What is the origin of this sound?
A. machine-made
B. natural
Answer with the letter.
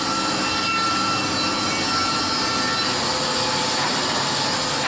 B